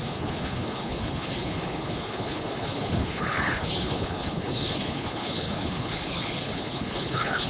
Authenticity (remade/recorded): remade